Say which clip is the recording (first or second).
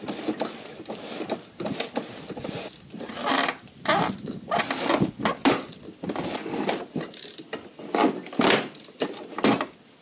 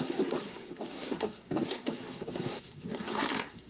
first